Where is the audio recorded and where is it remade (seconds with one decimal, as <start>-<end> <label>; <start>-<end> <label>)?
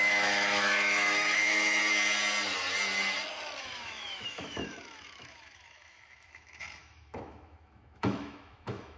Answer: 0.0-1.8 remade; 1.8-3.6 recorded; 3.6-9.0 remade